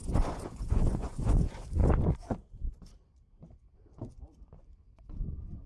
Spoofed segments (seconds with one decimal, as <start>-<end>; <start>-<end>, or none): 0.0-1.8; 4.1-5.7